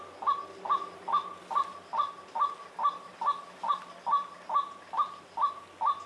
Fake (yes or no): no